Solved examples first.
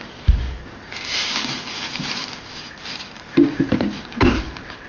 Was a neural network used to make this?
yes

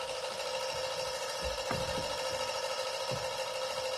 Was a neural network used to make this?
no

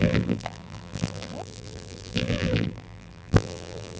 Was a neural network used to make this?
yes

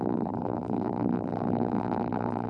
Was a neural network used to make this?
yes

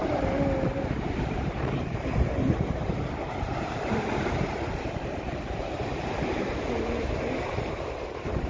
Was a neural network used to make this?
yes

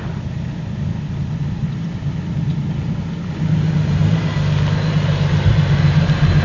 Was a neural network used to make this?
no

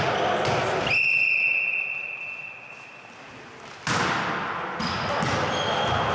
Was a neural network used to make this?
no